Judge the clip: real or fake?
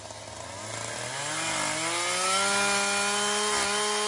real